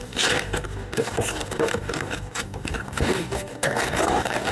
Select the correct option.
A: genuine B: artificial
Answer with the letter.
B